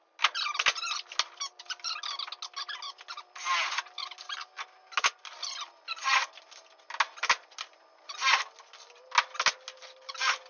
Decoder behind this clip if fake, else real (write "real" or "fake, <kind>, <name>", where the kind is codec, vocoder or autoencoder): real